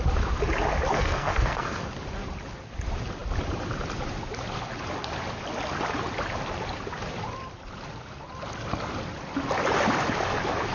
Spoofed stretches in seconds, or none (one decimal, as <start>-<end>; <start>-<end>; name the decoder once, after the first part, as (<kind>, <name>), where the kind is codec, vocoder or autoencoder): 0.9-1.9 (codec, SNAC)